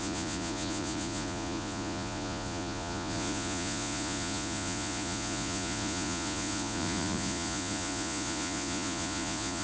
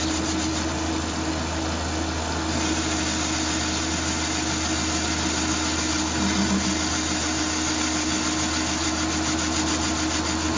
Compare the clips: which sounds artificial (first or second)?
first